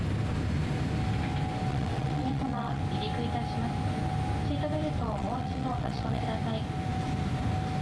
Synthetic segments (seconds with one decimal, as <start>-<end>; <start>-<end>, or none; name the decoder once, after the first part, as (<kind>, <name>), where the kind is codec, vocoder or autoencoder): 1.7-2.8 (vocoder, WaveNeXt); 5.0-6.2

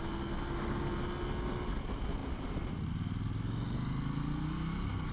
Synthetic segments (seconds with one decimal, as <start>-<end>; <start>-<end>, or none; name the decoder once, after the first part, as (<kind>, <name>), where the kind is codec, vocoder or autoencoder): none

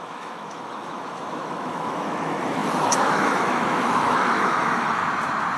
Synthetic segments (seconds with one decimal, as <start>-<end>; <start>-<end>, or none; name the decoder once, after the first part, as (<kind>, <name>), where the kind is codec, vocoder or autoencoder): 0.0-5.0 (autoencoder, DAC-VAE)

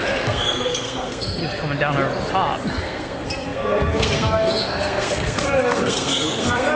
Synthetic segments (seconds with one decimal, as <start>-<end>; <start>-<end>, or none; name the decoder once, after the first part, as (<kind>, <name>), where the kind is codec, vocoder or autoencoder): 0.0-1.4 (codec, SNAC); 2.8-6.8